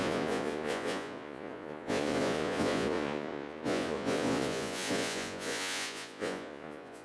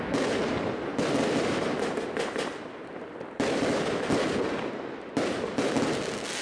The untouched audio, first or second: second